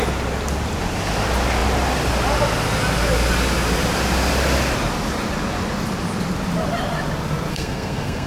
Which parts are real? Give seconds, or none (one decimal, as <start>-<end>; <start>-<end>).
0.0-7.5